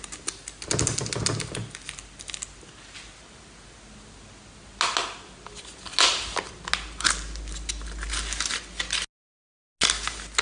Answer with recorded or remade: recorded